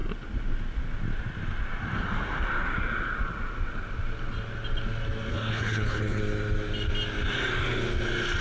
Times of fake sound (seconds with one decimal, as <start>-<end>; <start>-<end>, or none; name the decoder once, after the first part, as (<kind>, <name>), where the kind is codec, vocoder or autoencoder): 5.3-6.2 (codec, HILCodec)